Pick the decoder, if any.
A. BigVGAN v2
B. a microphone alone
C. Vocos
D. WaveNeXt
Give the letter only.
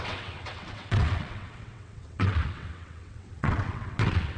D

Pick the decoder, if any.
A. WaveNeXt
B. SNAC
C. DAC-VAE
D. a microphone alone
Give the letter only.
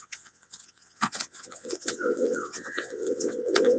A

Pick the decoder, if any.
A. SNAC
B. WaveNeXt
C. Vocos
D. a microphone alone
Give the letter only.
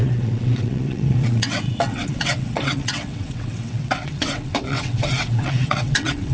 B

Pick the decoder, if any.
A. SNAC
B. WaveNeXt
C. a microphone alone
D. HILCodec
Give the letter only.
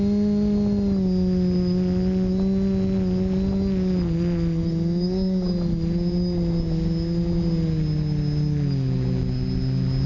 C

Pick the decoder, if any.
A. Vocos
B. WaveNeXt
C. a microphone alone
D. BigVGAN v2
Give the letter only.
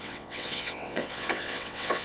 B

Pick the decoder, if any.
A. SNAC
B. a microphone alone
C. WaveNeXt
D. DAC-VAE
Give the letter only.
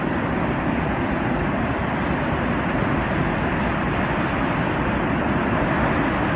B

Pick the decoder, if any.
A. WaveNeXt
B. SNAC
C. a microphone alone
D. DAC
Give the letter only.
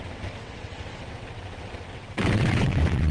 A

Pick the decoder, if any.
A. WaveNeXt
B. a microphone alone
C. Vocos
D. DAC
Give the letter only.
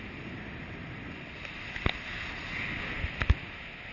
B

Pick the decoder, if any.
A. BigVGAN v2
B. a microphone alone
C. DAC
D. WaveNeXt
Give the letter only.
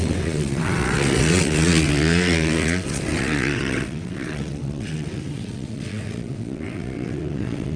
D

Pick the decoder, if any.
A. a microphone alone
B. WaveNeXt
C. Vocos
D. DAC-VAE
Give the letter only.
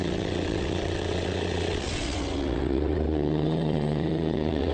B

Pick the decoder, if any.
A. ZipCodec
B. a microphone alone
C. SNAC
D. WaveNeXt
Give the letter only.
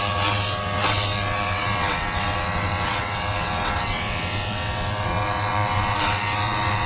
D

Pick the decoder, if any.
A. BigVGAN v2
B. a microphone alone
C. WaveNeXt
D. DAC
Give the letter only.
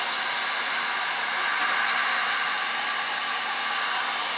B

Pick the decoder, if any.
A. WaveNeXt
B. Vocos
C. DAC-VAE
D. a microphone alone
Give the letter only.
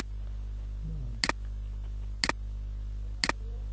D